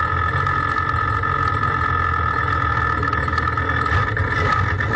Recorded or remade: recorded